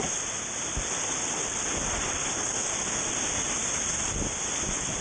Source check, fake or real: real